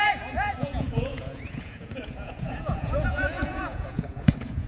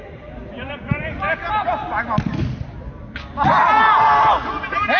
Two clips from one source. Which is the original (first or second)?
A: second